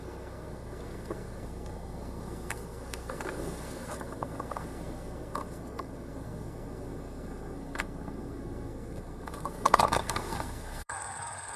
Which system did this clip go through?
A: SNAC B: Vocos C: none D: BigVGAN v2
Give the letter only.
A